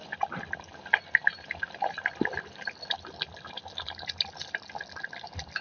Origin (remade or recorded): recorded